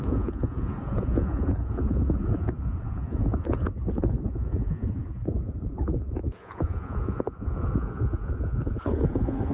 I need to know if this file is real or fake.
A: fake